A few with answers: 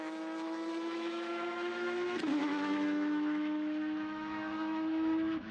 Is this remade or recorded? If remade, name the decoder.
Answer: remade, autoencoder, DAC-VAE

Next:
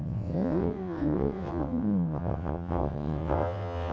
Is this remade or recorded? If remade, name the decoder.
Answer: remade, vocoder, WaveNeXt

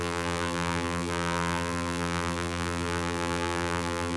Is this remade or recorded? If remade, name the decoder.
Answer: remade, vocoder, BigVGAN v2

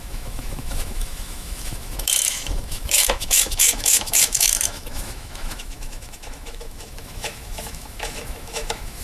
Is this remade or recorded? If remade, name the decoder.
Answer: remade, autoencoder, DAC-VAE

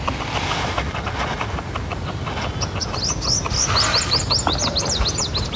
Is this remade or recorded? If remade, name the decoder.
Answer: recorded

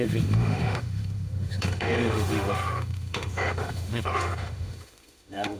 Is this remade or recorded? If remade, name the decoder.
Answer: remade, autoencoder, DAC-VAE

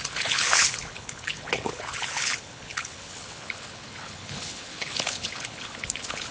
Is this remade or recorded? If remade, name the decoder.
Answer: remade, codec, HILCodec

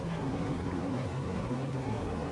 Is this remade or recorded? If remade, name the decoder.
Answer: remade, codec, SNAC